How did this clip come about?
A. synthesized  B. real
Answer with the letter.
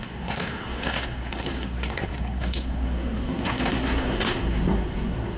A